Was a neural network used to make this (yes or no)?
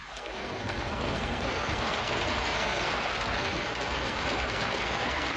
yes